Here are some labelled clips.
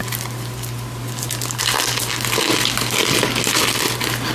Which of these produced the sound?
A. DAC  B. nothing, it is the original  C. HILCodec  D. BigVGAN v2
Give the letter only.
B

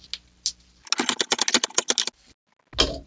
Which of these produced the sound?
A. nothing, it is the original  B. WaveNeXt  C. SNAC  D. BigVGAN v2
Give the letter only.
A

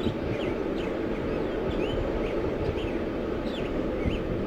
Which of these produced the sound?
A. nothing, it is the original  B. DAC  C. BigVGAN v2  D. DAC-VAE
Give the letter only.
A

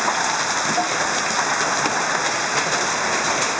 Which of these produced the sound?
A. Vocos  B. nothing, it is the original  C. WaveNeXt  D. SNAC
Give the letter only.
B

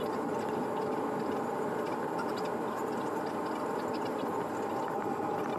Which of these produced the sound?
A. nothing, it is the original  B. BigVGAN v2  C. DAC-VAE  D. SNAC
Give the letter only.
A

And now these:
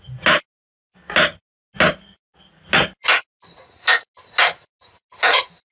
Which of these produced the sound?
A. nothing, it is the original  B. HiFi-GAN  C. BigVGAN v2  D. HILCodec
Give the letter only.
A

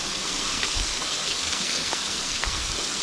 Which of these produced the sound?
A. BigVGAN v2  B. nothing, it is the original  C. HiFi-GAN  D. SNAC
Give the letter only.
D